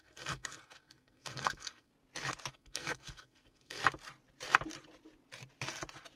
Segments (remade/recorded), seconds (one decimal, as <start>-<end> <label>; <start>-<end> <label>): 0.0-1.9 remade; 1.9-2.5 recorded; 2.5-3.8 remade; 3.8-6.2 recorded